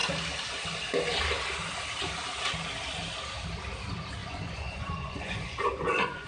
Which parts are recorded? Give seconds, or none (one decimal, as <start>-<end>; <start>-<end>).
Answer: 0.0-4.2